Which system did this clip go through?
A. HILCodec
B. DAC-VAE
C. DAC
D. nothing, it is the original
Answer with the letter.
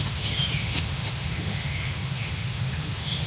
B